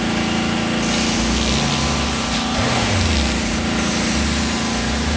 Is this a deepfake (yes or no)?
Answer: no